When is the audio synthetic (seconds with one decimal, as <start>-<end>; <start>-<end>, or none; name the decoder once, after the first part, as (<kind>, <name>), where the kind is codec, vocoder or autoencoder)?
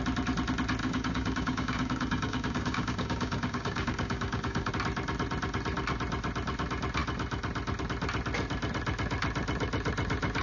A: 0.8-4.7 (codec, DAC)